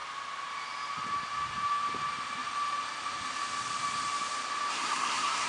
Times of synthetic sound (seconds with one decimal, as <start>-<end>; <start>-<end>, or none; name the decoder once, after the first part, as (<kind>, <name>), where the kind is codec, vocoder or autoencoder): 4.7-5.5 (codec, SNAC)